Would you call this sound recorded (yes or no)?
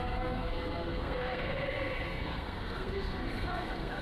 no